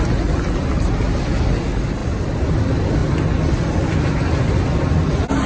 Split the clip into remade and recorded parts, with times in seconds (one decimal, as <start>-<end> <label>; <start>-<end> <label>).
0.0-5.5 recorded